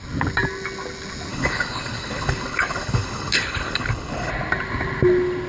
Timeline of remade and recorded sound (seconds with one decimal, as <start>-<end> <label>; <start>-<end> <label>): 0.0-1.3 recorded; 1.3-4.3 remade; 4.3-5.5 recorded